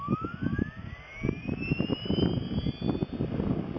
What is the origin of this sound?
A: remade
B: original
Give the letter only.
B